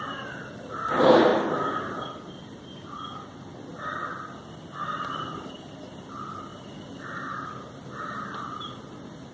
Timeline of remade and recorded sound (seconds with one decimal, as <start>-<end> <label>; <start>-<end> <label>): 0.0-9.3 recorded